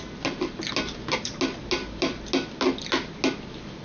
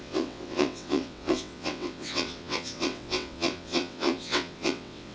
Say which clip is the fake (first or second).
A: second